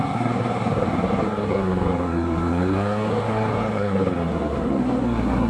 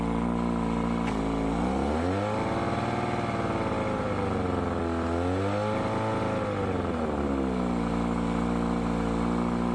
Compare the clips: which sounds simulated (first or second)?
first